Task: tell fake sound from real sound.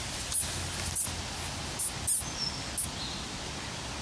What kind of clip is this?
real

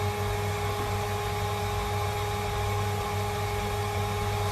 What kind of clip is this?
real